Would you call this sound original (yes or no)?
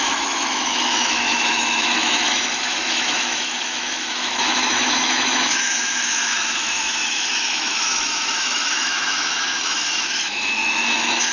no